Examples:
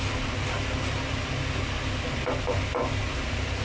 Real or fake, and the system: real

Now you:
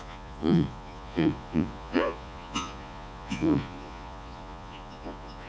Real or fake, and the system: fake, vocoder, Vocos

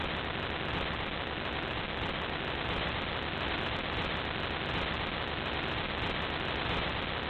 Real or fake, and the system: real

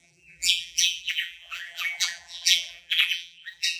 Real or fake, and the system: fake, vocoder, BigVGAN v2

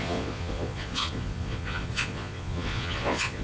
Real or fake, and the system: fake, vocoder, Vocos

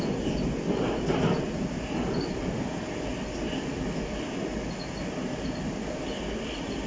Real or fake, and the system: real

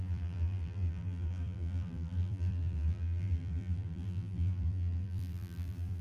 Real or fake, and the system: fake, vocoder, BigVGAN v2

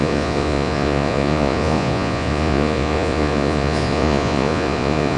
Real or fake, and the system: fake, vocoder, Vocos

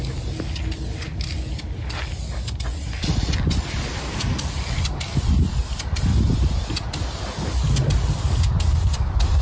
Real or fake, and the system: real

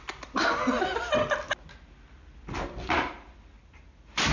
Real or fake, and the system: real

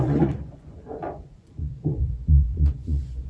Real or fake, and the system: fake, vocoder, Vocos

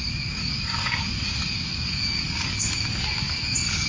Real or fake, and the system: fake, codec, DAC